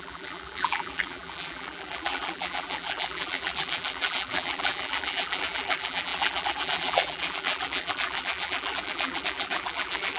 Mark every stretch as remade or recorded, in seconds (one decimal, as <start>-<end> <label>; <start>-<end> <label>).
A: 0.0-10.2 remade